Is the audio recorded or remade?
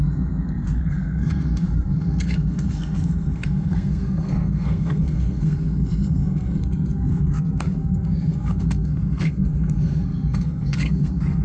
remade